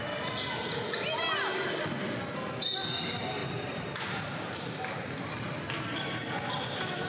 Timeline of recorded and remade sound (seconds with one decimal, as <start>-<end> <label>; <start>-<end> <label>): 0.0-3.4 recorded; 3.4-5.3 remade; 5.3-7.1 recorded

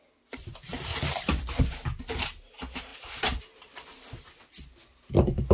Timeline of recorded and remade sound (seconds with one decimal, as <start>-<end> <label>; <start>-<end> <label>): 0.0-0.9 recorded; 0.9-1.6 remade; 1.6-2.9 recorded; 2.9-3.4 remade; 3.4-5.5 recorded

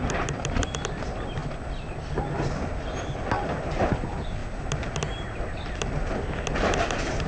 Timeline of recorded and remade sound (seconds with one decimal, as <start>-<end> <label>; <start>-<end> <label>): 0.0-1.4 recorded; 1.4-2.1 remade; 2.1-7.3 recorded

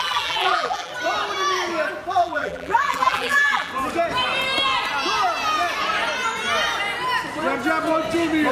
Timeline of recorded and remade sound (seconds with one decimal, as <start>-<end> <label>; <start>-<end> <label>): 0.0-0.9 remade; 0.9-2.1 recorded; 2.1-3.7 remade; 3.7-8.5 recorded